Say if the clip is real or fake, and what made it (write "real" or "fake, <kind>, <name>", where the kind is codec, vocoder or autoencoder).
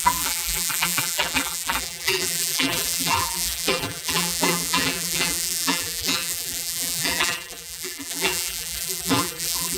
fake, vocoder, BigVGAN v2